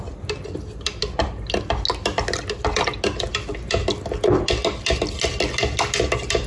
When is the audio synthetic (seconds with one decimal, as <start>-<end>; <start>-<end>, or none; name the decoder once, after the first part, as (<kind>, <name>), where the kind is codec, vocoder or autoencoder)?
none